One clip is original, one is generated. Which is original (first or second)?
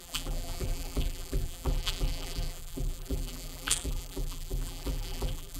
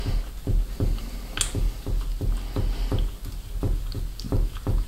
second